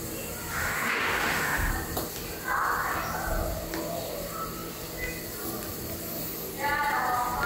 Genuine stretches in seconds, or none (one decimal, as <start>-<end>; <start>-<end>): 0.0-0.6; 1.7-7.5